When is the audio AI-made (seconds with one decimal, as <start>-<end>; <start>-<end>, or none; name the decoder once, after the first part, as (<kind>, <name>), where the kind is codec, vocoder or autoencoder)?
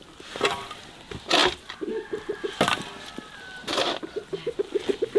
none